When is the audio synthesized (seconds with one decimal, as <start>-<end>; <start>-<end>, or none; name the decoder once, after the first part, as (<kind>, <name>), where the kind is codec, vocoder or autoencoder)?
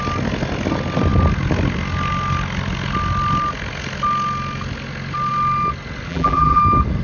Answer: 6.1-6.6 (vocoder, BigVGAN v2)